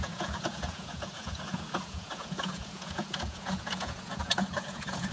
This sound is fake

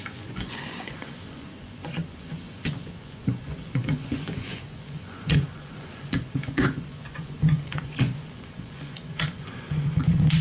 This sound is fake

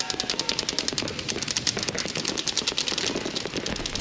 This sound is real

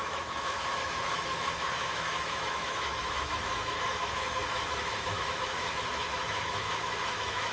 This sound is fake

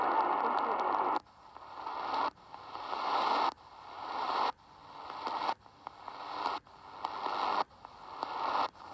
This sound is real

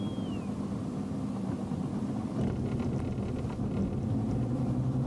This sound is real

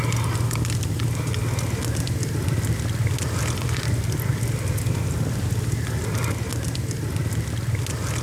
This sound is real